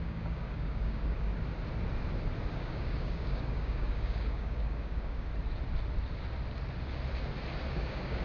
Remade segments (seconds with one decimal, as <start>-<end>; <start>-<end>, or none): 0.0-1.3; 2.5-5.3; 7.7-8.2